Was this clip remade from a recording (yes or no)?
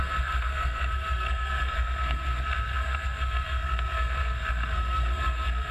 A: yes